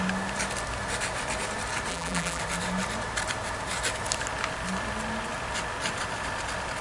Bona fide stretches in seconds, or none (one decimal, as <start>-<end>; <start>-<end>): 0.0-1.9; 2.4-6.8